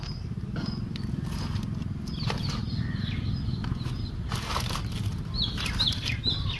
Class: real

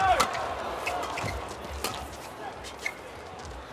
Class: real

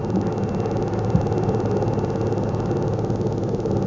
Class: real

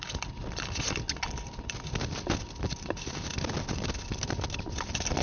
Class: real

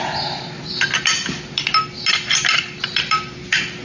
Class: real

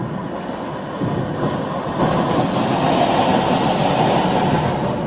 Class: real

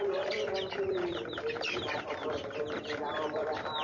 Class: fake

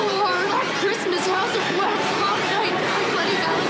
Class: fake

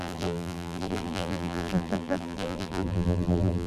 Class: fake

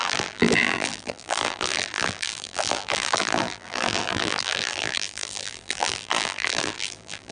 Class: fake